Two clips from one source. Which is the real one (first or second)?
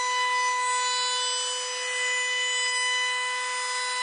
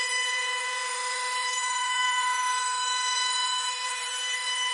first